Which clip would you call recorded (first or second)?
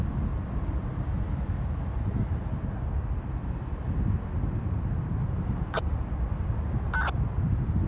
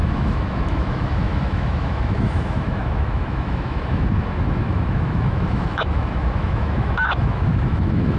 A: first